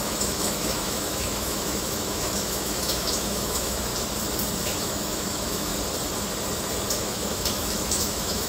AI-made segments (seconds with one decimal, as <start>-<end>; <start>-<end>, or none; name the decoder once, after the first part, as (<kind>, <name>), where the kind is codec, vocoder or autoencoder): 0.0-3.9 (autoencoder, DAC-VAE); 4.8-5.7; 6.9-8.5